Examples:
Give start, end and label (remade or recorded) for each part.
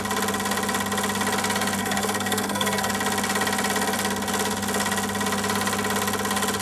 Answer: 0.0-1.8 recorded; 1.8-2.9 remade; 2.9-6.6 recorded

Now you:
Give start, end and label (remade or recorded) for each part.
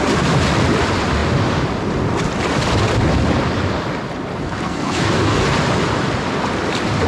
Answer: 0.0-4.3 recorded; 4.3-5.4 remade; 5.4-7.1 recorded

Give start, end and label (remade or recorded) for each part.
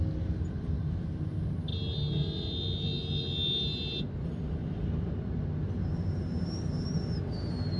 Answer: 0.0-7.8 recorded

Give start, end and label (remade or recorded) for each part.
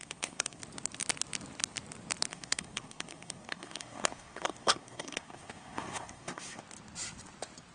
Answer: 0.0-0.6 remade; 0.6-2.3 recorded; 2.3-6.6 remade; 6.6-7.7 recorded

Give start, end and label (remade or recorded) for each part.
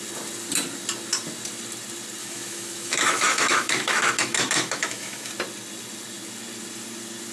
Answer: 0.0-2.2 recorded; 2.2-5.3 remade; 5.3-7.3 recorded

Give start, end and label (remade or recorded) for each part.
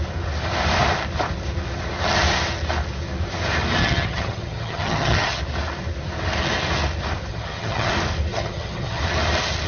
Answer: 0.0-3.8 recorded; 3.8-5.4 remade; 5.4-7.3 recorded; 7.3-7.9 remade; 7.9-8.3 recorded; 8.3-9.0 remade; 9.0-9.7 recorded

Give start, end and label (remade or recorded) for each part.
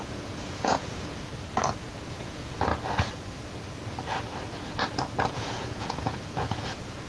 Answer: 0.0-1.3 remade; 1.3-2.2 recorded; 2.2-2.7 remade; 2.7-5.3 recorded; 5.3-7.1 remade